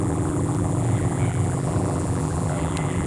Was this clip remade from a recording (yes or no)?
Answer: yes